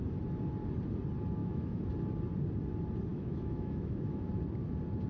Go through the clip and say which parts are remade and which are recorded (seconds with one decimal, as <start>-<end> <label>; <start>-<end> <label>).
0.0-1.4 recorded; 1.4-1.9 remade; 1.9-3.1 recorded; 3.1-4.3 remade; 4.3-5.1 recorded

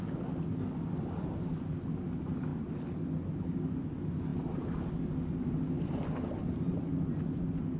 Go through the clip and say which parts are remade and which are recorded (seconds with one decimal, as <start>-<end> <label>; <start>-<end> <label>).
0.0-7.8 recorded

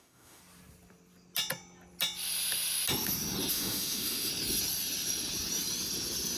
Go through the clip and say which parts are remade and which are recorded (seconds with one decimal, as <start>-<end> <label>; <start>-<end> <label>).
0.0-0.4 remade; 0.4-3.5 recorded; 3.5-4.3 remade; 4.3-6.4 recorded

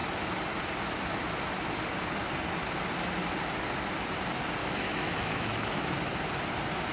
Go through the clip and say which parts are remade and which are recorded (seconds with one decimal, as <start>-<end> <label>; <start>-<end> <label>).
0.0-4.6 recorded; 4.6-5.8 remade; 5.8-6.9 recorded

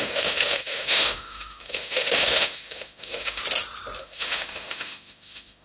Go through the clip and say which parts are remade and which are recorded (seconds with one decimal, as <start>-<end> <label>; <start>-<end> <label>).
0.0-3.4 remade; 3.4-4.0 recorded; 4.0-5.6 remade